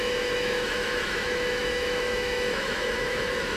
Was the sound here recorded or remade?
remade